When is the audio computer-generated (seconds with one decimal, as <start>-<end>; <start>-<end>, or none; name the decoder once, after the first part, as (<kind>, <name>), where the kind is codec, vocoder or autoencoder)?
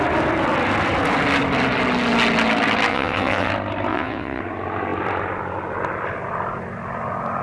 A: 2.9-3.5 (vocoder, WaveNeXt); 3.9-4.4